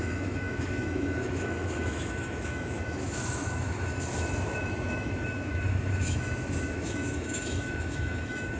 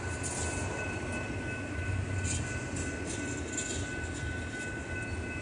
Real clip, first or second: second